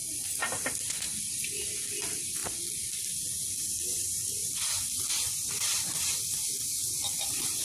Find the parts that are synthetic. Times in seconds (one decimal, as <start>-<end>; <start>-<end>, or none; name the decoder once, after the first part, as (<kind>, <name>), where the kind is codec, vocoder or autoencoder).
1.3-2.4 (vocoder, BigVGAN v2); 3.6-7.6